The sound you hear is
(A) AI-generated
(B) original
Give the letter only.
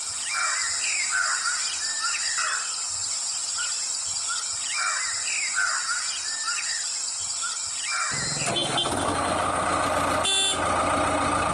B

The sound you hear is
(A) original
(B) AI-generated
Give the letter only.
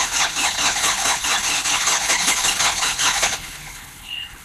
B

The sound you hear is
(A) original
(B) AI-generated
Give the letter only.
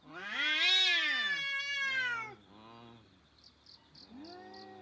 A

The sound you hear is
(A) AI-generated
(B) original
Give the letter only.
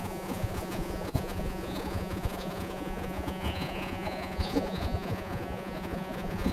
A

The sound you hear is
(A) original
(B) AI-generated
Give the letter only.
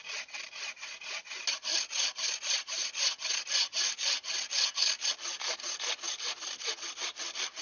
A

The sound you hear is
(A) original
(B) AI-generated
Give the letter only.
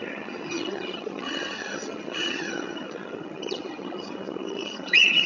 B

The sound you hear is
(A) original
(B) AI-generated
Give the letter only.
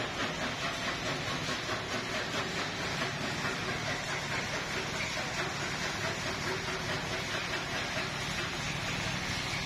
A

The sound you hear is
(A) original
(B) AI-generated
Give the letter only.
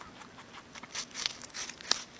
A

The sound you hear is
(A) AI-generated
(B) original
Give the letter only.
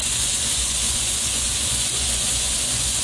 A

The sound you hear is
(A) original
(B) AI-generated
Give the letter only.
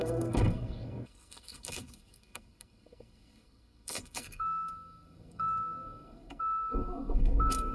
B